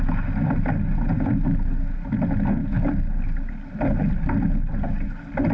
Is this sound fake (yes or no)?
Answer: no